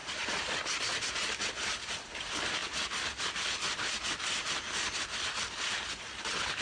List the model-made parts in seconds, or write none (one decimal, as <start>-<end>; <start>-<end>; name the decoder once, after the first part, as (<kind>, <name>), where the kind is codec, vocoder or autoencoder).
none